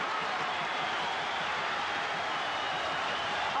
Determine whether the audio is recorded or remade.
remade